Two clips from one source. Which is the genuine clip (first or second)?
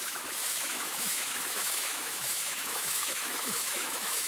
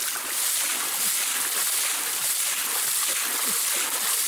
second